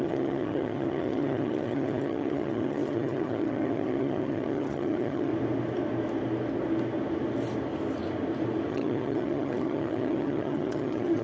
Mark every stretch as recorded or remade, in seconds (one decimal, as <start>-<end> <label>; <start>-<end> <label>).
0.0-5.3 remade; 5.3-8.7 recorded; 8.7-11.2 remade